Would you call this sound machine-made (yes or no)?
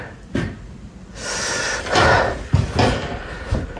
no